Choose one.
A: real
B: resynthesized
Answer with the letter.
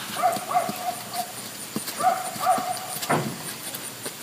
A